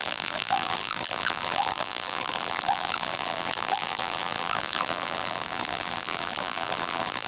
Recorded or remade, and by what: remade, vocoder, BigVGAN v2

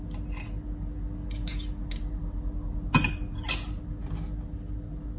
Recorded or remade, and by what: recorded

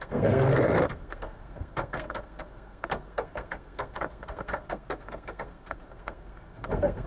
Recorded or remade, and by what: remade, codec, SNAC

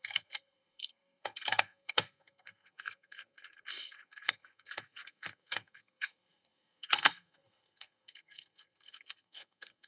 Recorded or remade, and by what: remade, codec, SNAC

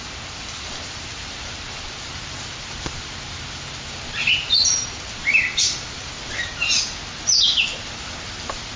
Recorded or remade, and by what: recorded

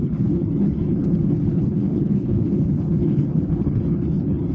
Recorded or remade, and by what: remade, codec, HILCodec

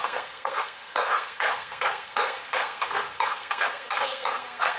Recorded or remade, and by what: remade, codec, SNAC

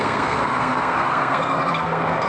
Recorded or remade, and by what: remade, codec, SNAC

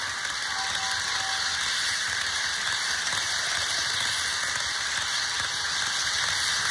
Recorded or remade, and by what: recorded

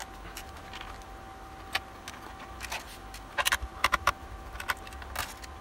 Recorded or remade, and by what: recorded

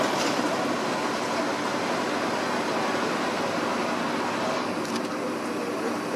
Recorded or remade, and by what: recorded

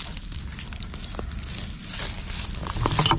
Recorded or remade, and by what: recorded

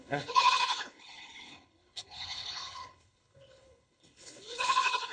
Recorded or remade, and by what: remade, codec, HILCodec